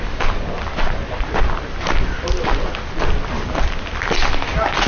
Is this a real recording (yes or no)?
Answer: yes